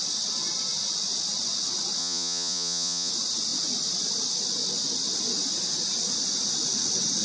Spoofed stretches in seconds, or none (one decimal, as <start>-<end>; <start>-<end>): 2.0-3.1